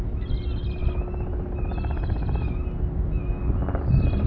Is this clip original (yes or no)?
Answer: yes